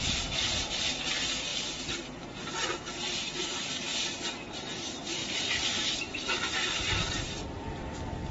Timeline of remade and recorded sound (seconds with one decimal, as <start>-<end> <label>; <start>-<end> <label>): 0.0-1.5 remade; 1.5-3.1 recorded; 3.1-3.9 remade; 3.9-4.5 recorded; 4.5-5.2 remade; 5.2-8.3 recorded